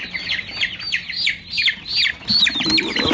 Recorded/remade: recorded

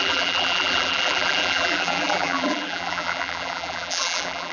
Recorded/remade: remade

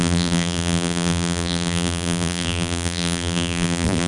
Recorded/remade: remade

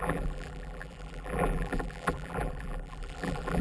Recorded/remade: remade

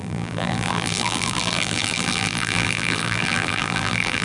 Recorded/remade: remade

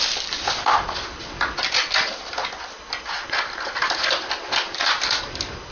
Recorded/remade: recorded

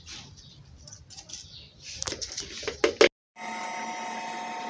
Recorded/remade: recorded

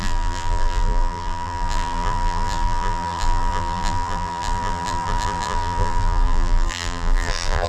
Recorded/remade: remade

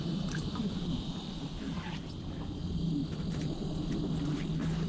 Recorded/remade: recorded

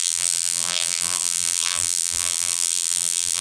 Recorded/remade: remade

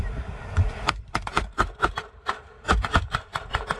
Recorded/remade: remade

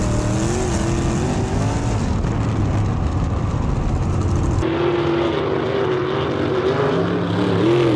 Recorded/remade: recorded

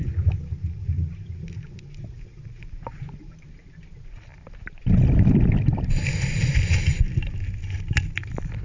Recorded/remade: recorded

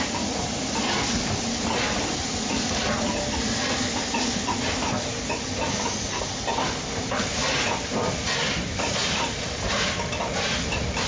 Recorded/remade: recorded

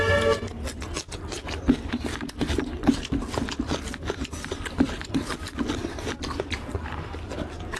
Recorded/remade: recorded